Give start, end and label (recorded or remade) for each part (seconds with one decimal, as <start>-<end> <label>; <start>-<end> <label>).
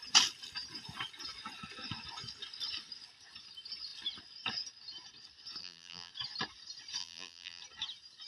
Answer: 0.0-5.6 recorded; 5.6-6.1 remade; 6.1-7.0 recorded; 7.0-7.6 remade; 7.6-8.3 recorded